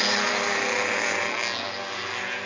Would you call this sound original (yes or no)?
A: yes